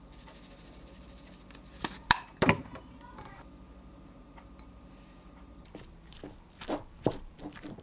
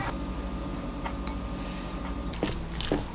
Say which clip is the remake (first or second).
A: first